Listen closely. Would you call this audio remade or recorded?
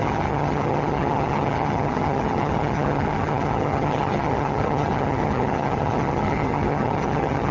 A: remade